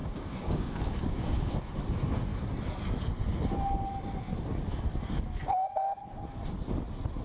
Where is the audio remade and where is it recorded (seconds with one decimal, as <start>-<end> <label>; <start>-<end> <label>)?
0.0-1.5 remade; 1.5-7.2 recorded